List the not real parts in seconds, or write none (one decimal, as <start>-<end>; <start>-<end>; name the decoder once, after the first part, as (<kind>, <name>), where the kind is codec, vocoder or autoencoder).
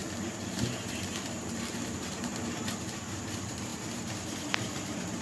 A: 0.0-5.2 (vocoder, BigVGAN v2)